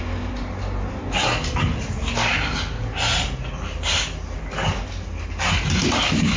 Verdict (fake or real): real